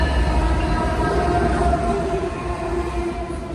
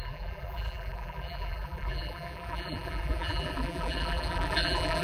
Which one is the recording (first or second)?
first